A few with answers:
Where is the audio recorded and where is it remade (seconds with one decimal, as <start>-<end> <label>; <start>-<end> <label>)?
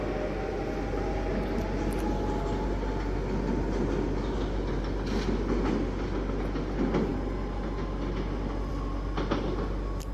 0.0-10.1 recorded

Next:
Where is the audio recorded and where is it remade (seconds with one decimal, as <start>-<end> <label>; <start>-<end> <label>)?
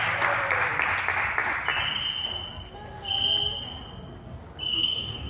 0.0-4.7 recorded; 4.7-5.3 remade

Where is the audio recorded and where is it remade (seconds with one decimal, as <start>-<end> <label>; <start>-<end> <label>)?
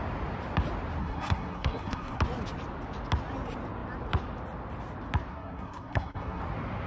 0.0-1.0 recorded; 1.0-2.2 remade; 2.2-5.3 recorded; 5.3-6.4 remade; 6.4-6.9 recorded